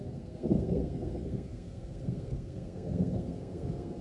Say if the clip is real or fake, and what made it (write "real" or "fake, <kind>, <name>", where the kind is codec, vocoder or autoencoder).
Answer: fake, codec, SNAC